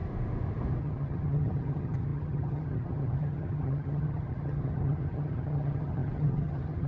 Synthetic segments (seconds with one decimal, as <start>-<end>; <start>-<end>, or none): 0.8-6.9